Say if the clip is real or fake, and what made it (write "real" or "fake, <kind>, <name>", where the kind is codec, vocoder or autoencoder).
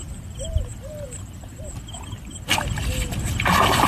real